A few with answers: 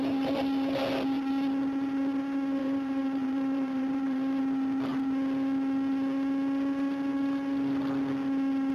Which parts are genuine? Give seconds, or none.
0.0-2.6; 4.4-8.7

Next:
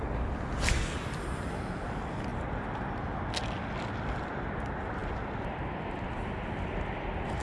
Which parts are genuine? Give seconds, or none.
0.0-7.4

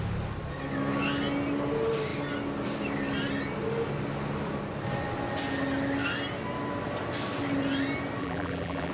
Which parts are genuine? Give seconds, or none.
0.0-8.2